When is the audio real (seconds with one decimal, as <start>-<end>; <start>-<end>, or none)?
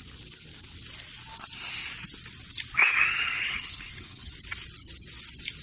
0.0-3.2; 4.3-5.6